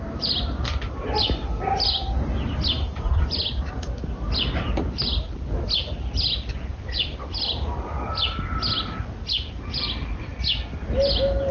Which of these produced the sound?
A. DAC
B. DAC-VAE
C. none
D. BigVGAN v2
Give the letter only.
C